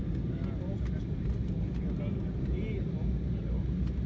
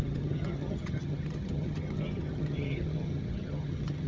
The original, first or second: first